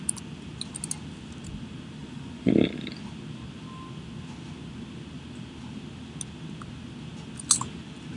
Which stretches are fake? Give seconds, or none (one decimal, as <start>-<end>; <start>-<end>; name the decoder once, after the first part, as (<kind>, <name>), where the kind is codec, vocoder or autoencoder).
2.0-2.5 (vocoder, Vocos)